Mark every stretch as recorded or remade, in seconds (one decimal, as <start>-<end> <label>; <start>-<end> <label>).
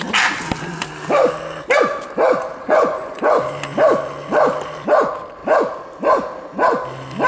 0.0-2.6 recorded; 2.6-3.2 remade; 3.2-7.3 recorded